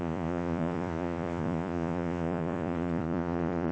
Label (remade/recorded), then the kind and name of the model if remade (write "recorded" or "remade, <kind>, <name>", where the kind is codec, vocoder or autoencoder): remade, vocoder, Vocos